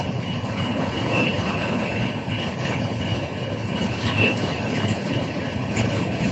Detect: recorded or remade remade